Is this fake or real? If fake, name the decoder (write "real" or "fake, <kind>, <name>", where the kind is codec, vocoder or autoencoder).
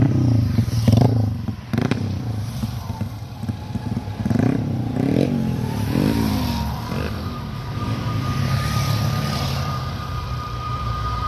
fake, vocoder, BigVGAN v2